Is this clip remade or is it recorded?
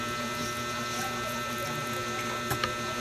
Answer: recorded